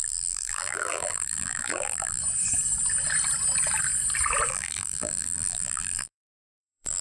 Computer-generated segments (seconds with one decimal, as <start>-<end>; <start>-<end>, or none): 0.0-2.2; 4.5-7.0